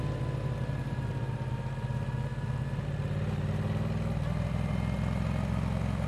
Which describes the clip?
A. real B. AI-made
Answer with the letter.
A